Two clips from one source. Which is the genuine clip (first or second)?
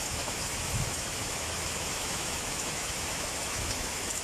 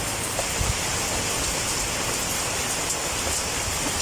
second